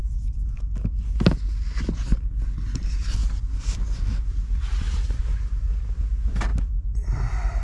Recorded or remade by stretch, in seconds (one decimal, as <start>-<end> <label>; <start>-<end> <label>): 0.0-6.5 recorded; 6.5-7.6 remade